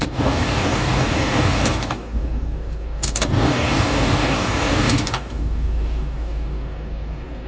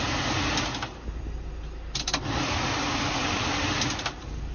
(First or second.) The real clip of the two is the second